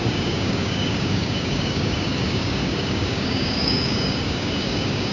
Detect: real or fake fake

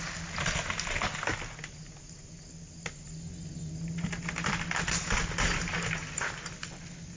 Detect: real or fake real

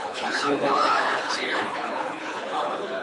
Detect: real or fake fake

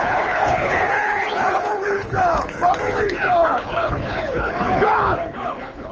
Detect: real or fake fake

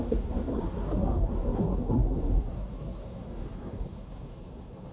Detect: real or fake fake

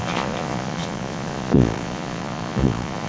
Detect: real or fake fake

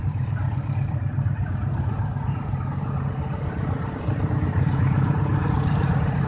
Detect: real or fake fake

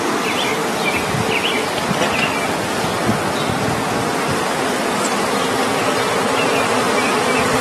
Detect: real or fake real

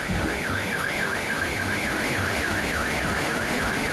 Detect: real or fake fake